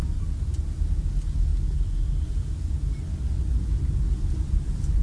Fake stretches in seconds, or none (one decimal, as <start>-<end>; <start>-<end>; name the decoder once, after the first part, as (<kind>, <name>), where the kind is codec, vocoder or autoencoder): none